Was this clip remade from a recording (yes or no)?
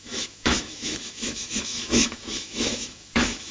yes